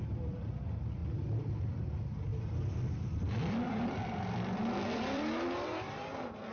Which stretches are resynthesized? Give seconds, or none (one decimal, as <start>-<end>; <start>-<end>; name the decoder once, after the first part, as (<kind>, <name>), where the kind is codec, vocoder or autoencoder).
1.0-1.7 (vocoder, BigVGAN v2); 2.3-6.5